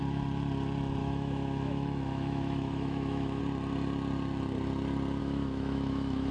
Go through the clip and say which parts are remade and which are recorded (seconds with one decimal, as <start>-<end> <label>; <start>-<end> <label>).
0.0-1.0 recorded; 1.0-3.4 remade; 3.4-5.2 recorded; 5.2-6.3 remade